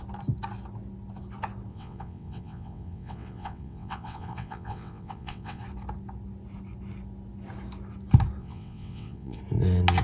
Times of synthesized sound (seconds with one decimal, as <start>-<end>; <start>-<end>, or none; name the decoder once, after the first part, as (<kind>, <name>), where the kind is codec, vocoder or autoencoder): 1.7-5.6 (vocoder, WaveNeXt); 8.4-9.4